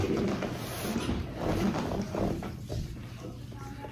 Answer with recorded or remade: recorded